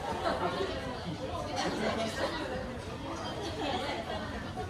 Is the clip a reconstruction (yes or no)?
no